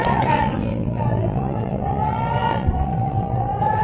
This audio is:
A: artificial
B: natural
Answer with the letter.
A